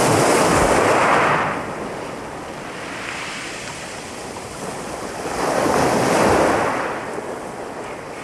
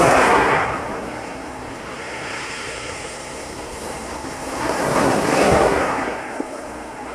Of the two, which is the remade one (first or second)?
second